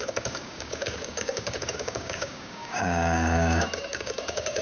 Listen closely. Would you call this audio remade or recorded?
remade